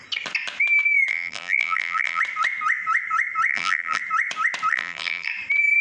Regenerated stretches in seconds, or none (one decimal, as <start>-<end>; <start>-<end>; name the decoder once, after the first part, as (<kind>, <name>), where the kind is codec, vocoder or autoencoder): 1.1-2.2 (vocoder, BigVGAN v2); 3.5-4.0; 4.7-5.3

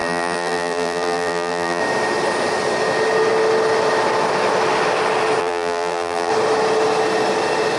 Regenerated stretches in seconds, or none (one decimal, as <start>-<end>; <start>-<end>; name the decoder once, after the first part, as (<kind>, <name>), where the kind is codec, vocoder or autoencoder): 0.0-1.8 (vocoder, BigVGAN v2); 5.4-6.3

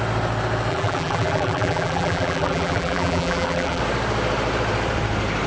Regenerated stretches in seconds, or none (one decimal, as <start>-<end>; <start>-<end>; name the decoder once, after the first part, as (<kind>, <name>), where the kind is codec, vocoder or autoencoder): 0.7-3.8 (vocoder, BigVGAN v2)

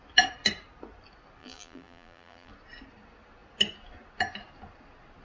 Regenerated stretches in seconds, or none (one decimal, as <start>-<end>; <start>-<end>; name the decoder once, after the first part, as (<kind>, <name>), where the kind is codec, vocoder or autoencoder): 1.4-2.5 (vocoder, BigVGAN v2)

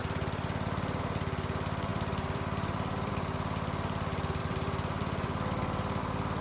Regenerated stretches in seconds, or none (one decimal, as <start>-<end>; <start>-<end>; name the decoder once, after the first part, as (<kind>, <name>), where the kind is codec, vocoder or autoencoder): 0.0-1.0 (vocoder, BigVGAN v2); 1.9-3.1; 4.4-6.0